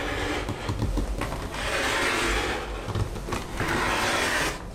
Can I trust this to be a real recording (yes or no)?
yes